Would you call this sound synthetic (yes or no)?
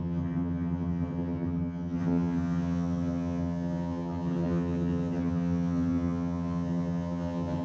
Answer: yes